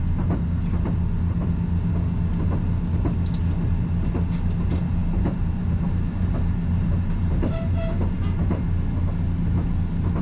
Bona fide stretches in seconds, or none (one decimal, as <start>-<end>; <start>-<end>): 0.0-5.0; 8.6-10.2